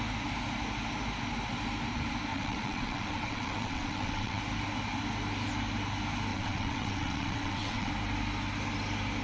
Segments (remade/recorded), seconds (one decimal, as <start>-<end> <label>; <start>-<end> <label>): 0.0-2.3 recorded; 2.3-4.4 remade; 4.4-6.3 recorded; 6.3-7.9 remade; 7.9-9.2 recorded